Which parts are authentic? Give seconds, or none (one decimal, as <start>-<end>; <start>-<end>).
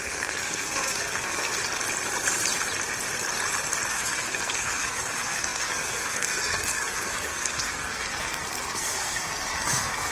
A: 1.5-3.9